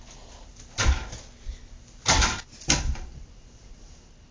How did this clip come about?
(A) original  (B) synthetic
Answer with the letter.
A